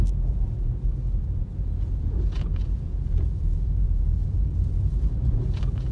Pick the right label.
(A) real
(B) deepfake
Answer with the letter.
B